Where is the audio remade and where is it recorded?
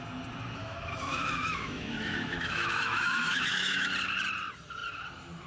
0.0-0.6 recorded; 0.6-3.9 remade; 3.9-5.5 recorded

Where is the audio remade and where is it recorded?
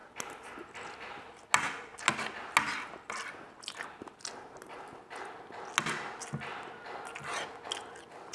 0.0-8.3 recorded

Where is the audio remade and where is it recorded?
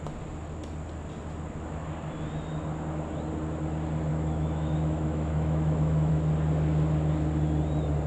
0.0-4.1 recorded; 4.1-6.1 remade; 6.1-8.1 recorded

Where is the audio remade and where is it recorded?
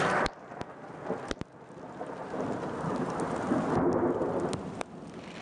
0.0-5.4 recorded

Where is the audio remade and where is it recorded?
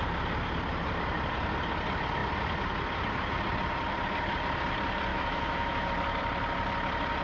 0.0-5.1 recorded; 5.1-5.9 remade; 5.9-7.2 recorded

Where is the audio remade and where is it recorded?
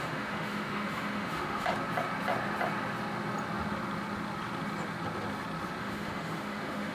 0.0-1.7 remade; 1.7-5.8 recorded; 5.8-6.9 remade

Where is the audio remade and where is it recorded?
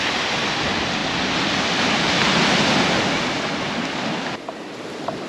0.0-5.3 recorded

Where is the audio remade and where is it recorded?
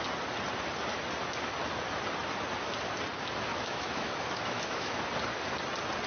0.0-3.5 recorded; 3.5-5.1 remade; 5.1-6.1 recorded